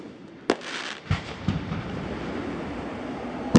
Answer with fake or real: real